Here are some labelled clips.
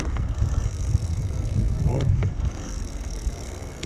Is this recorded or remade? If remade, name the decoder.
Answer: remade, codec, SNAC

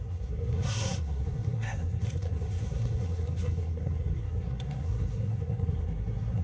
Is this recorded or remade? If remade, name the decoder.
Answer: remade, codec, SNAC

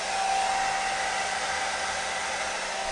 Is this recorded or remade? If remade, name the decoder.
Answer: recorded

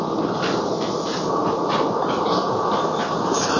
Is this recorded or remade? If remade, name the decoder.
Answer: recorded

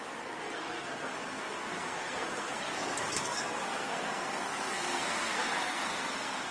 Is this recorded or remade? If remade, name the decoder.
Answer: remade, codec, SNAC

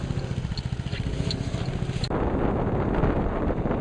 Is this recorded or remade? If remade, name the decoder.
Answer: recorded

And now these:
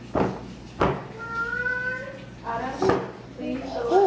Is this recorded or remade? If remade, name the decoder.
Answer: recorded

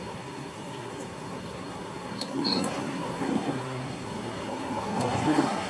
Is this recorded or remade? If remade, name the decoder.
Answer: remade, codec, SNAC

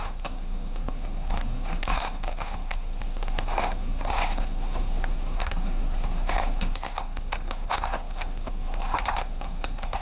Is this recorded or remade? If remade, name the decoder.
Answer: remade, codec, SNAC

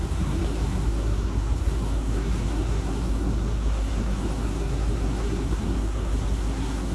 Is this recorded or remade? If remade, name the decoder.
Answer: remade, codec, SNAC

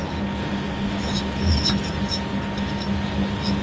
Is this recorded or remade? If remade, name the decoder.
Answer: recorded